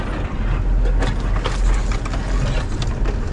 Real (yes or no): yes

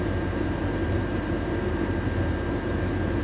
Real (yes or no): yes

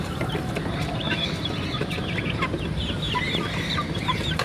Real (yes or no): no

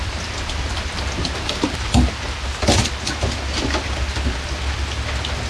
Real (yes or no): yes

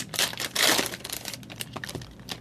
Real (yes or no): no